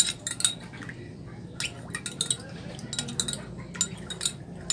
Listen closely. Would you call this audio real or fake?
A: real